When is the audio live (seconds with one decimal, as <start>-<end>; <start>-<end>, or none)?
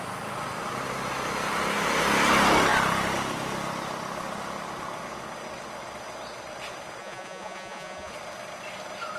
0.0-7.0; 8.1-9.2